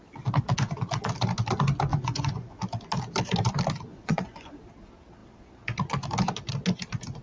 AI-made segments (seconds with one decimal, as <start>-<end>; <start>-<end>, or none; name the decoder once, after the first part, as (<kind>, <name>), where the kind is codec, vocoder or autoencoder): 1.9-2.6 (vocoder, Vocos); 3.9-4.5